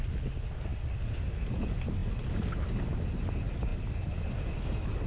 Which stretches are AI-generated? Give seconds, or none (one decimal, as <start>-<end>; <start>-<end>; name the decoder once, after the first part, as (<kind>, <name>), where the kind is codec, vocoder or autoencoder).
none